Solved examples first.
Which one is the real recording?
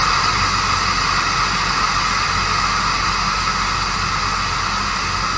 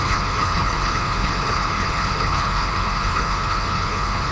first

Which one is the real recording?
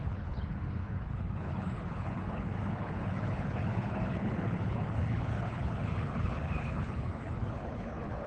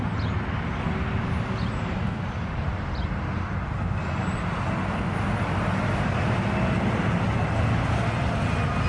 second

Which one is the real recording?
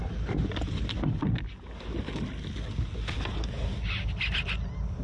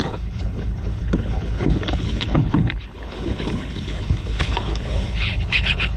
first